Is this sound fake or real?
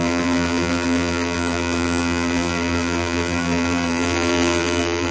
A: fake